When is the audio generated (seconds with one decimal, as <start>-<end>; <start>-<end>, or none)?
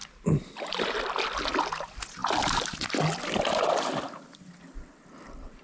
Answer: none